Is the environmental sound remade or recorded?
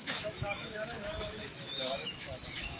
remade